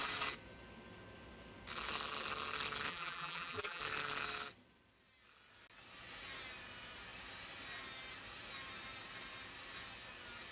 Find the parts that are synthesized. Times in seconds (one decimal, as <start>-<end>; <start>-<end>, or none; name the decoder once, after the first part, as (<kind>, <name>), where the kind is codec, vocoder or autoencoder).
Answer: 2.9-3.8 (vocoder, BigVGAN v2)